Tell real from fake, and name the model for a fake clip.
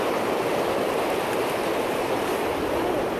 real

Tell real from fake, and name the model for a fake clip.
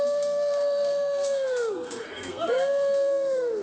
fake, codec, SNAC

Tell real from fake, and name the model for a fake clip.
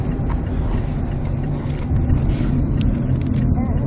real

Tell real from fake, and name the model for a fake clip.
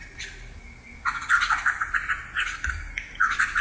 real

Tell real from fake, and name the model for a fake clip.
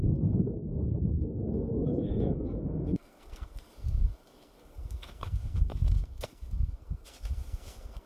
fake, codec, SNAC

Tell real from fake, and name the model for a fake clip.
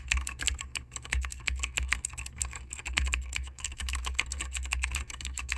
fake, codec, SNAC